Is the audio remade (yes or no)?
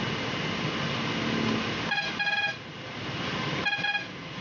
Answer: no